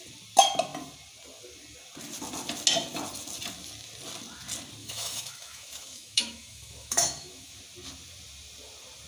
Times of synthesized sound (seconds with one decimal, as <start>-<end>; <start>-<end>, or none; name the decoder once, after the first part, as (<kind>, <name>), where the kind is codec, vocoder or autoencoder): 4.8-7.6 (autoencoder, DAC-VAE)